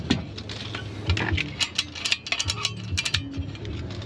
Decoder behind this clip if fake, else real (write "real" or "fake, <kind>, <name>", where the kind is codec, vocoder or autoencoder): real